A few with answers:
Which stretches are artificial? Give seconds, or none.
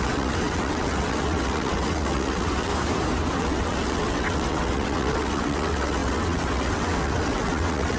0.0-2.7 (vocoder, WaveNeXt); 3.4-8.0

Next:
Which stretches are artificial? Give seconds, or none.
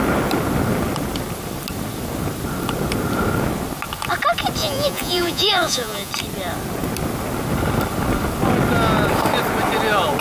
4.6-6.1 (vocoder, Vocos)